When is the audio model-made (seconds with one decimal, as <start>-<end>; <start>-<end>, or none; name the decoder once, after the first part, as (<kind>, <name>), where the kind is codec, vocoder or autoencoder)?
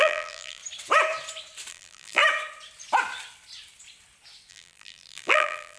0.0-0.6 (vocoder, BigVGAN v2); 1.7-2.2; 4.5-5.8